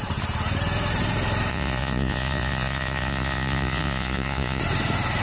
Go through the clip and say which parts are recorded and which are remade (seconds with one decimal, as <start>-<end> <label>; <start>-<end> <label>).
0.0-1.5 recorded; 1.5-4.6 remade; 4.6-5.2 recorded